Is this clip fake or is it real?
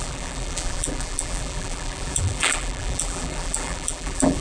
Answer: fake